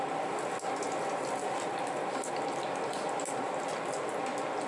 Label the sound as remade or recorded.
recorded